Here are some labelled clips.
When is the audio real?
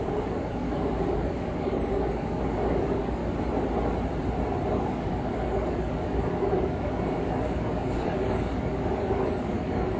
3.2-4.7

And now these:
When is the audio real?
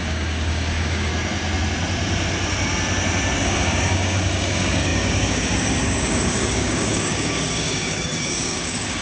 1.1-3.4